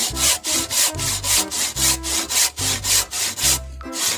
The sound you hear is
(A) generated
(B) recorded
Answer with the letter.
B